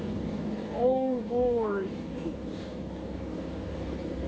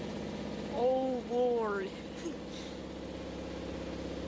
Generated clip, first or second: first